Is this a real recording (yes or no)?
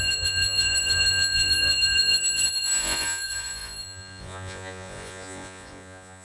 no